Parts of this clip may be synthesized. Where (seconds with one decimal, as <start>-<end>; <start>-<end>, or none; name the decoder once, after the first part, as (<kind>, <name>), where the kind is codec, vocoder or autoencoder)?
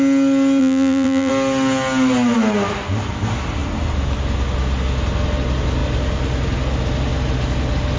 0.6-1.3 (vocoder, BigVGAN v2)